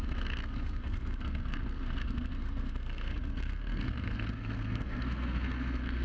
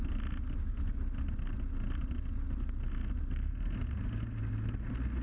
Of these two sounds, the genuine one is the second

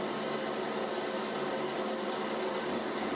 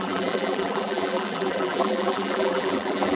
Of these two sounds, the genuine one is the first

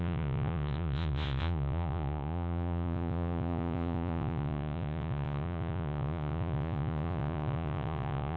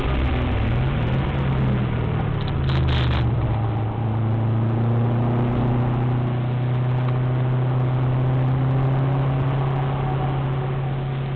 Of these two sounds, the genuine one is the second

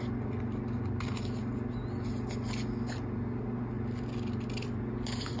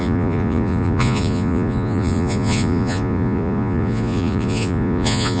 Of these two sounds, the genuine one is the first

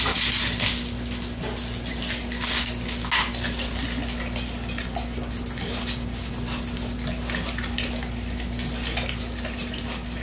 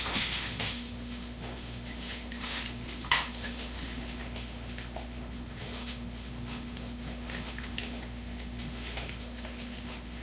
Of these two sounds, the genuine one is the first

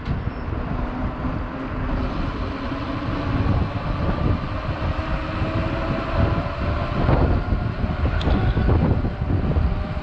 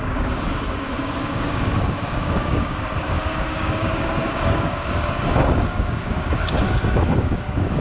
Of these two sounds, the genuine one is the first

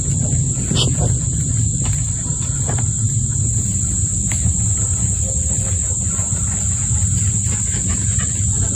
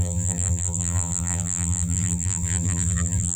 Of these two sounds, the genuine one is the first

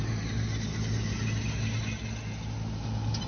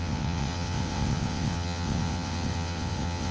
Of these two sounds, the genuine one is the first